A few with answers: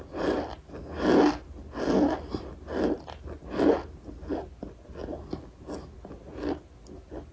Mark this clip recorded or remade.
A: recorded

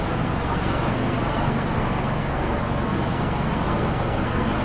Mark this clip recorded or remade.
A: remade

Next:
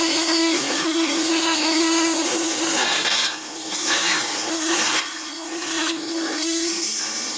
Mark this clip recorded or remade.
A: remade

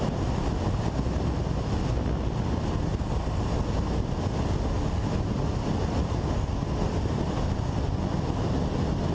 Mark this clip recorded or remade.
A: recorded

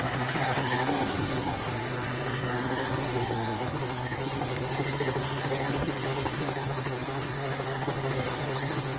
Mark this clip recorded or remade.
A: remade